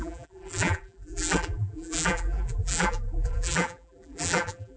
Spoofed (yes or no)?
yes